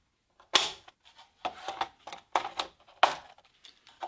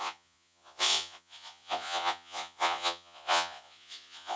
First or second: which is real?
first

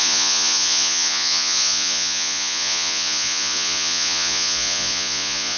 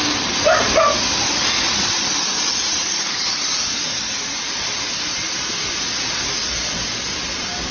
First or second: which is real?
second